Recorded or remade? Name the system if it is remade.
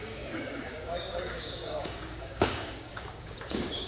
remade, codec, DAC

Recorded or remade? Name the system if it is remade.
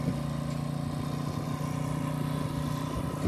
recorded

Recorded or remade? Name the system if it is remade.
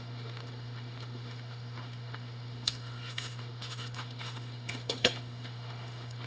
remade, autoencoder, DAC-VAE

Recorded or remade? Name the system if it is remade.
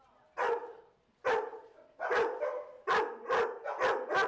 recorded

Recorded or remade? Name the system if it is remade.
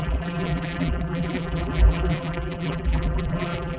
remade, vocoder, BigVGAN v2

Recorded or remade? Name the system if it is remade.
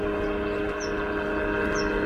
recorded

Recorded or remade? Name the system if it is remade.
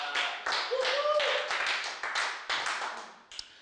recorded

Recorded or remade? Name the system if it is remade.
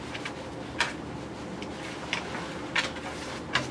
recorded